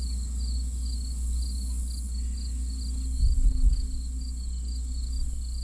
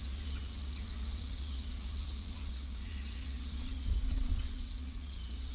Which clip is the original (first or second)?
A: first